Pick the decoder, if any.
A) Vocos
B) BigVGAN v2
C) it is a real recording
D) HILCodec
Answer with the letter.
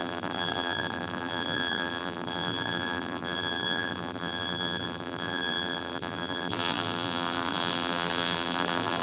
B